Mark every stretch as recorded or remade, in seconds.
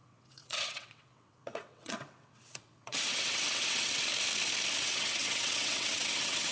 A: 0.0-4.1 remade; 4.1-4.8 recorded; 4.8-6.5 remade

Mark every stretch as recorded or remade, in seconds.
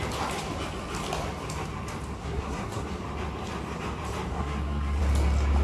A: 0.0-2.2 recorded; 2.2-2.9 remade; 2.9-4.3 recorded; 4.3-5.0 remade; 5.0-5.6 recorded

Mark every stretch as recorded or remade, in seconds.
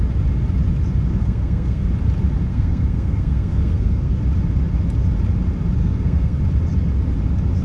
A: 0.0-1.1 recorded; 1.1-1.9 remade; 1.9-2.5 recorded; 2.5-4.2 remade; 4.2-5.8 recorded; 5.8-6.4 remade; 6.4-7.6 recorded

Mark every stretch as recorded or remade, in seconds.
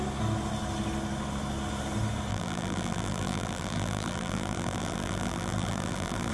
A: 0.0-2.3 recorded; 2.3-6.3 remade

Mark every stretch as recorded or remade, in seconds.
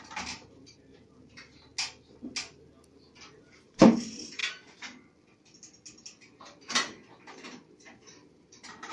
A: 0.0-1.7 remade; 1.7-3.3 recorded; 3.3-4.4 remade; 4.4-6.4 recorded; 6.4-8.9 remade